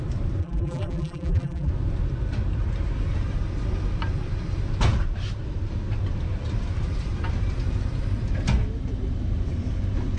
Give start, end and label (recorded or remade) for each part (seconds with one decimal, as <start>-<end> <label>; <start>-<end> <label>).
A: 0.0-0.4 recorded; 0.4-1.7 remade; 1.7-10.2 recorded